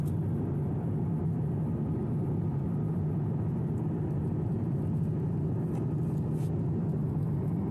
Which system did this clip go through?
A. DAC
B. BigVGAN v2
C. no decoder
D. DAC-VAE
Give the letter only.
C